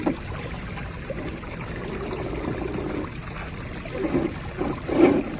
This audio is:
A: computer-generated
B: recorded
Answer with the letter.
B